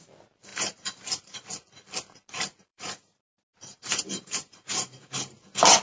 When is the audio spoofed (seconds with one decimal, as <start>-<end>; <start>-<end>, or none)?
0.5-1.5; 2.7-5.1